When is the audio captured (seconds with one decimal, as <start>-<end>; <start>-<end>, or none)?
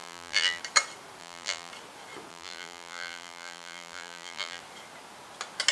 0.6-1.2; 1.7-2.3; 4.6-5.7